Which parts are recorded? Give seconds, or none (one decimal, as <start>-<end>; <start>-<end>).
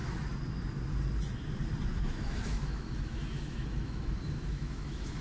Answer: 0.0-1.9